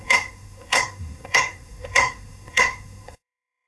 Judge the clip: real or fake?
fake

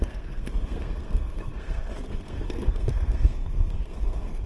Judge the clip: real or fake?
fake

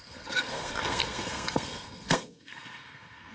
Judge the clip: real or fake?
fake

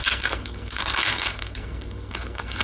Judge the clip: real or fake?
fake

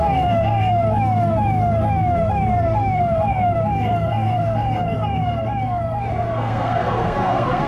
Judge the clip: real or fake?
fake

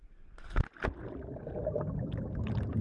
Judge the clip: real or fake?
real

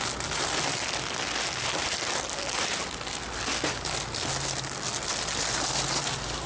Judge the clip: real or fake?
real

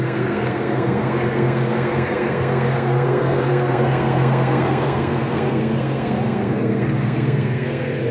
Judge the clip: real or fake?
fake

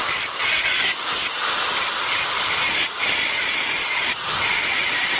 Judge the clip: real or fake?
real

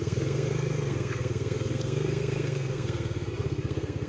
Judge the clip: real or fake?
fake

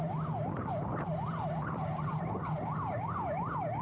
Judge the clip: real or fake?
real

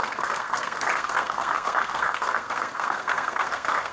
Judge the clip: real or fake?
fake